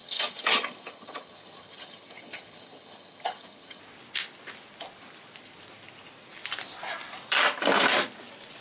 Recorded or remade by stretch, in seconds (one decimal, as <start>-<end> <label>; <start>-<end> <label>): 0.0-3.8 remade; 3.8-8.6 recorded